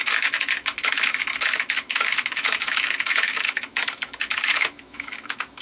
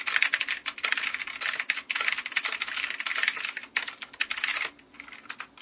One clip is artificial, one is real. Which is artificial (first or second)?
first